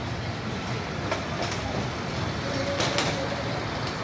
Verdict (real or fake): real